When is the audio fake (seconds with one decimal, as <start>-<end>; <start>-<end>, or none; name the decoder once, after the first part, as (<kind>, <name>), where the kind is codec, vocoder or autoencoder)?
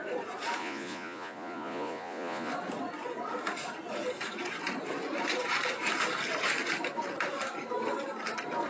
0.6-2.5 (vocoder, Vocos)